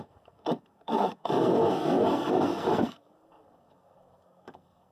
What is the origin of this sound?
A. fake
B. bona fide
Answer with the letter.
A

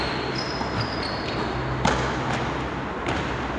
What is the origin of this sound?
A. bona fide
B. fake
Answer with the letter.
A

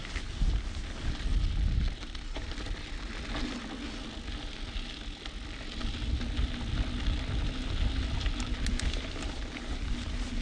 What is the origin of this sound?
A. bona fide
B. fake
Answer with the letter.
A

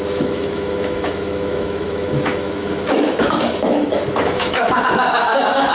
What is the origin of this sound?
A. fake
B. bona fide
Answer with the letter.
A